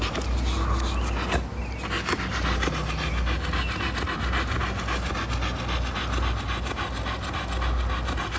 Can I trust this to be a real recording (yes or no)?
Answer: yes